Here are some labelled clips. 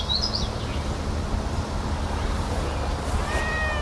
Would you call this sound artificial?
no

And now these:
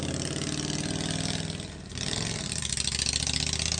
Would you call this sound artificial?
no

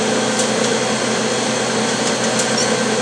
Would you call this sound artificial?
no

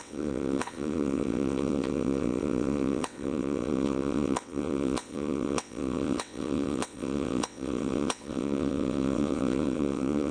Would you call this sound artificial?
yes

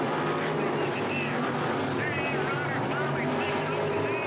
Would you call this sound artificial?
no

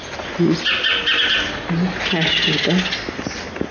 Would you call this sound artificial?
no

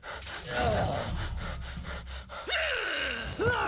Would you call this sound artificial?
no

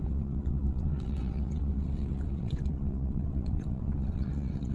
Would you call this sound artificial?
yes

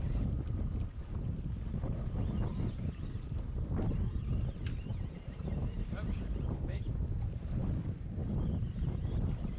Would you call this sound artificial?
no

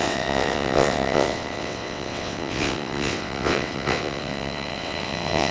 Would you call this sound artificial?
yes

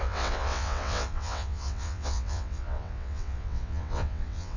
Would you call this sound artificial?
yes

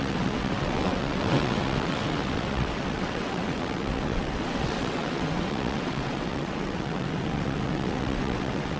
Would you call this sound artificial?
yes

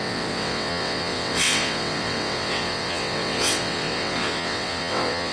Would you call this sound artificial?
yes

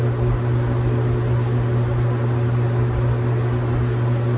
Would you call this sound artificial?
no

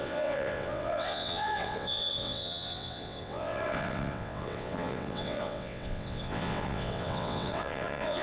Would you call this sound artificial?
yes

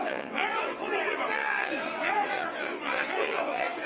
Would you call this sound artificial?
yes